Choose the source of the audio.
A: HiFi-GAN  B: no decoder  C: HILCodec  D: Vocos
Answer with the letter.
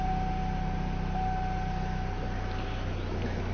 B